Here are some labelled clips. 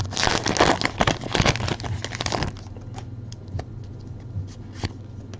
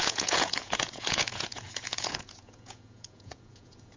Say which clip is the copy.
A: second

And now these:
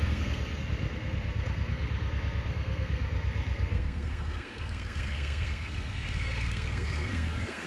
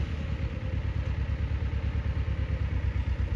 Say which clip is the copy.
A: first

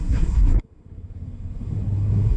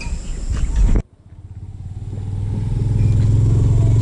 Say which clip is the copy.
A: first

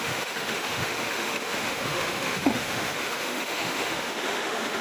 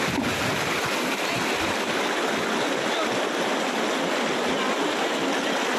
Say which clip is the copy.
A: first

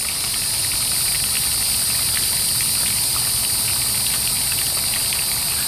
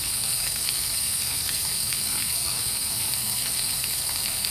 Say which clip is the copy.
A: second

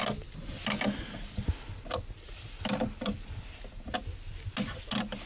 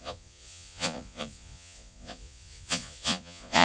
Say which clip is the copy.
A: second